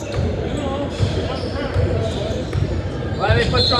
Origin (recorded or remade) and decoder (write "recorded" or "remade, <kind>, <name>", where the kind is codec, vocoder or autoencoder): recorded